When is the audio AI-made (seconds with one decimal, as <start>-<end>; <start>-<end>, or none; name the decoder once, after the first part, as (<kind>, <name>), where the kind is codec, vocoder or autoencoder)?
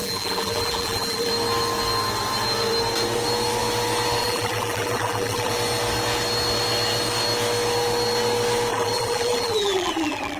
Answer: 0.0-1.3 (vocoder, BigVGAN v2); 4.2-5.5; 8.7-10.4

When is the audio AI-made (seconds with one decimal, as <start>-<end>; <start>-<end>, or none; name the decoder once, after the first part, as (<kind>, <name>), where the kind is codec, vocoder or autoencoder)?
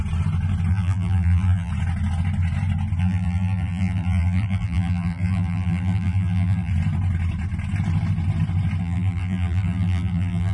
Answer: 0.7-1.7 (vocoder, BigVGAN v2); 3.0-6.7; 8.8-10.5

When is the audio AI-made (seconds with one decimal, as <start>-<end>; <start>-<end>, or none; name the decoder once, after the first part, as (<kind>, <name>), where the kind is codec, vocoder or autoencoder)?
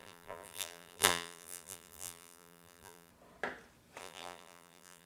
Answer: 0.0-3.1 (vocoder, BigVGAN v2); 4.0-5.1